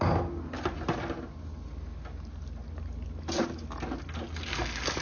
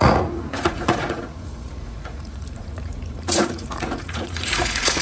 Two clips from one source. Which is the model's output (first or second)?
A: second